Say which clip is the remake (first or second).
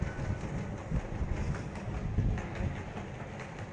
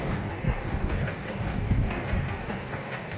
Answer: second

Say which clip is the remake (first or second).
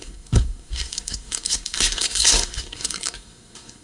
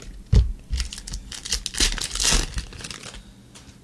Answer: first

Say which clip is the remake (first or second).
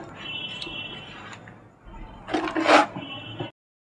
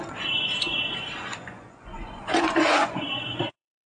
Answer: second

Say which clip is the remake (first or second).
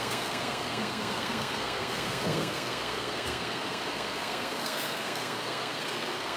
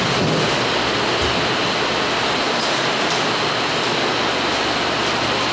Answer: first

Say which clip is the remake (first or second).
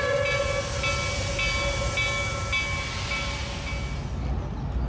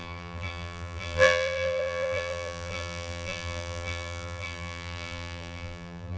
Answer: second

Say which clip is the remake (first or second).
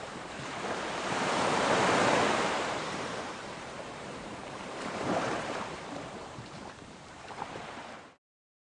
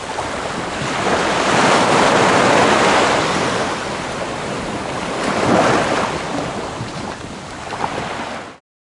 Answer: first